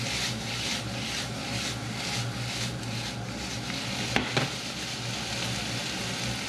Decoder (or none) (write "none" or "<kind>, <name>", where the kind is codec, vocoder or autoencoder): none